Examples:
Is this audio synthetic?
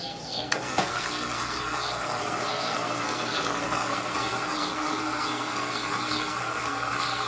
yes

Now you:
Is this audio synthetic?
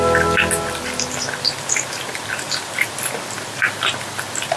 no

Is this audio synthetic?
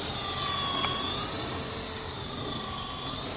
no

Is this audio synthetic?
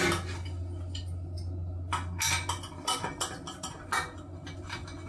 no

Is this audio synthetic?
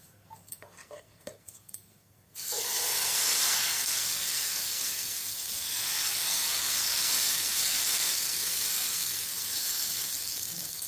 yes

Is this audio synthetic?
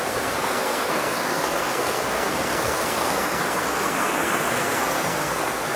yes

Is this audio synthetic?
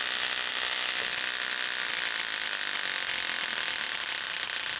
no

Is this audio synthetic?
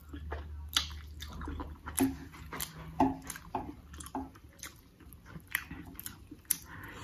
no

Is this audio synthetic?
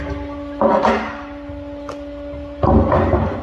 no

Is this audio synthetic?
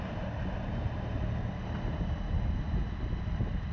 no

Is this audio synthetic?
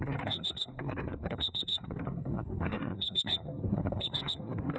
yes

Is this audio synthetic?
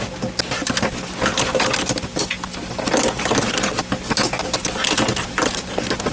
no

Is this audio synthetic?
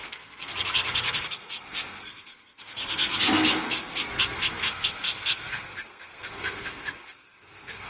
yes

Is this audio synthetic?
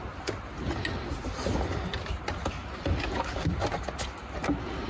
no